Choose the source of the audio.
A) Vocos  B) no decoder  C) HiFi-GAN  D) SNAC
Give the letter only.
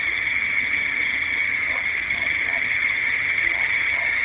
C